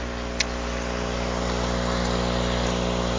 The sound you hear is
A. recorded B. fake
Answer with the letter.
A